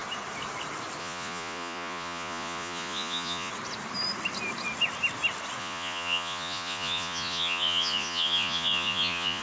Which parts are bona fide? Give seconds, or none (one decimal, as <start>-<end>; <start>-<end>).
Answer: 0.0-1.0; 3.5-5.6

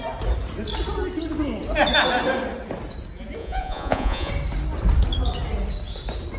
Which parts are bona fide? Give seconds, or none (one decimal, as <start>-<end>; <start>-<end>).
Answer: 0.0-3.4; 4.3-6.4

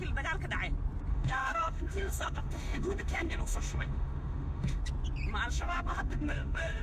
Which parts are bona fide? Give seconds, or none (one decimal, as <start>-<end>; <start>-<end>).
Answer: 0.0-1.1; 4.8-5.5

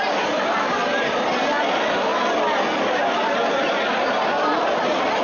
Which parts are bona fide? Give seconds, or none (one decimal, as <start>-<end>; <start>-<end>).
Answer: 0.0-5.2